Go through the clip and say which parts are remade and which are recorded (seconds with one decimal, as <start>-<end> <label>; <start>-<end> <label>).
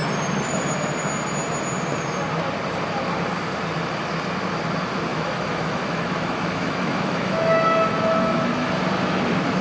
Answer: 0.0-5.1 recorded; 5.1-8.7 remade; 8.7-9.6 recorded